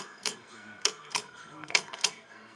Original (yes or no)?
no